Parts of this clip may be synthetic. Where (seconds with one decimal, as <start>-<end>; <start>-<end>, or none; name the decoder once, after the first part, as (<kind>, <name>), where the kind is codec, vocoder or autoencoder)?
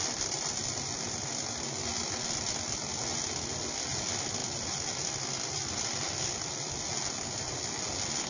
none